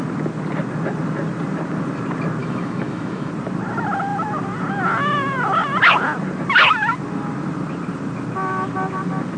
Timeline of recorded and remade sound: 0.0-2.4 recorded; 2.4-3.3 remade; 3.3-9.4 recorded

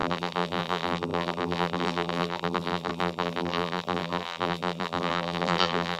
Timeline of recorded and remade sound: 0.0-6.0 remade

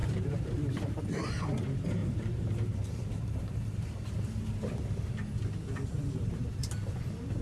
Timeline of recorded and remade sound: 0.0-1.0 remade; 1.0-2.0 recorded; 2.0-4.2 remade; 4.2-5.9 recorded; 5.9-6.7 remade; 6.7-7.4 recorded

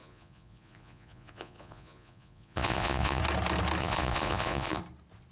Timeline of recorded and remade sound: 0.0-3.2 remade; 3.2-3.8 recorded; 3.8-4.8 remade; 4.8-5.3 recorded

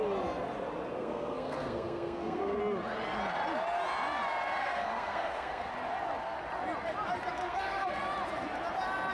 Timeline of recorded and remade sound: 0.0-1.0 recorded; 1.0-2.6 remade; 2.6-4.6 recorded; 4.6-5.7 remade; 5.7-7.4 recorded; 7.4-8.0 remade; 8.0-9.1 recorded